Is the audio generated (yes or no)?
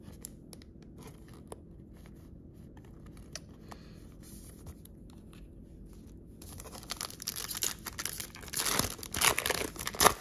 no